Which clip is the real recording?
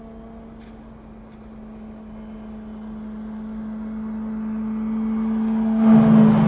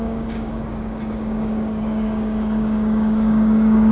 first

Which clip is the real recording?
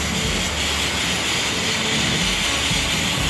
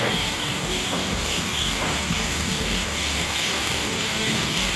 first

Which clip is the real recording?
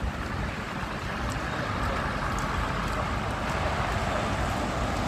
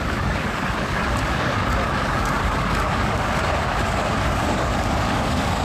first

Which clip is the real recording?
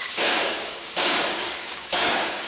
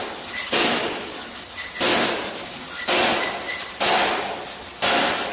second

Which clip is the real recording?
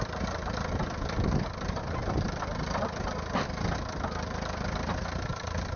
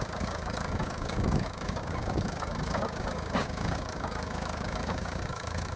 first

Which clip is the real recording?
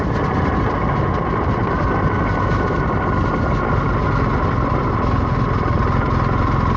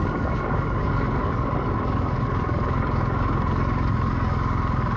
first